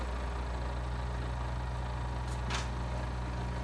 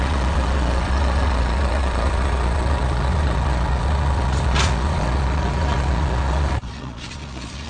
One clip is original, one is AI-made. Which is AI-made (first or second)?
second